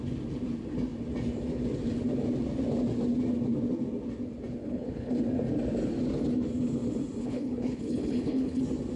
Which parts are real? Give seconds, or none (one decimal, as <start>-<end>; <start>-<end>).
0.0-4.6; 5.2-7.2; 8.6-9.0